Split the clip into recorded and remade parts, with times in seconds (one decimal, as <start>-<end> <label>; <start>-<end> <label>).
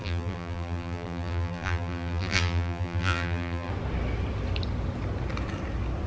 0.0-3.7 remade; 3.7-6.1 recorded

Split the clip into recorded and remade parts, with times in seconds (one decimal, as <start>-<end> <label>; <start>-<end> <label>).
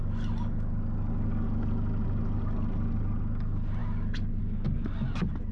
0.0-5.5 recorded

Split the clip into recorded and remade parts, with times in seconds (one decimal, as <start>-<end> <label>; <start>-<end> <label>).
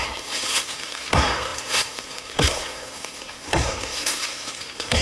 0.0-5.0 remade